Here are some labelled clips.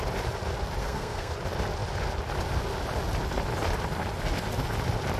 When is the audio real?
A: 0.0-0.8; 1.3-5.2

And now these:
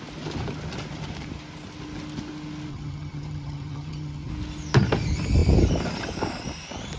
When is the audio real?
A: 0.0-2.7; 4.3-7.0

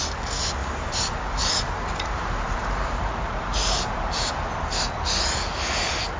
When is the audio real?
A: 0.0-0.6; 4.3-6.2

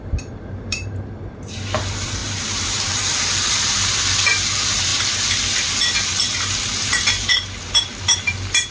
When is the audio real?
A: 4.9-6.4

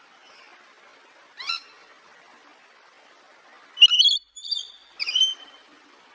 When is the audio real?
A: 0.0-6.1

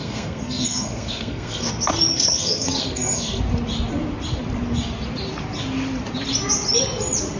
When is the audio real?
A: 1.7-2.1; 3.4-7.4